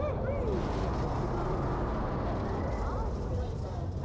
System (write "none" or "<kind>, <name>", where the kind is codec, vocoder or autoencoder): none